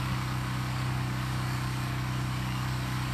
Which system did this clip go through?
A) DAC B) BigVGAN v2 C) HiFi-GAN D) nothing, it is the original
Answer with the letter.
A